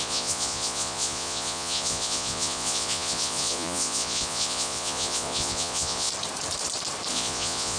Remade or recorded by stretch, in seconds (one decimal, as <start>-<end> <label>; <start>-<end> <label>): 0.0-6.1 remade; 6.1-7.1 recorded; 7.1-7.8 remade